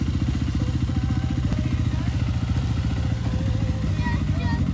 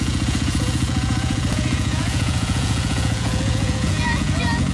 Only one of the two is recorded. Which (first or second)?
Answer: first